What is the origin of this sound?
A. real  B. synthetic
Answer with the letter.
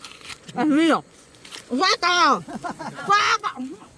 B